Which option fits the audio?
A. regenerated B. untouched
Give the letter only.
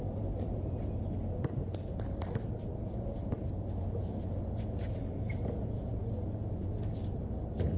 B